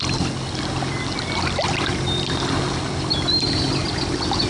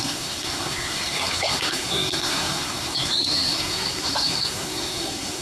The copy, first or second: second